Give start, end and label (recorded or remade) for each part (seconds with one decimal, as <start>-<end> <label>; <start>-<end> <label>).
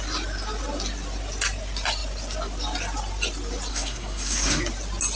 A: 0.0-3.7 recorded; 3.7-4.6 remade; 4.6-5.2 recorded